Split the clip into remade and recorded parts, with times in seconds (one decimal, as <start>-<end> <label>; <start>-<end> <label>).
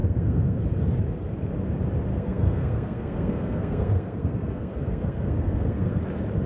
0.0-0.6 remade; 0.6-2.1 recorded; 2.1-6.0 remade; 6.0-6.5 recorded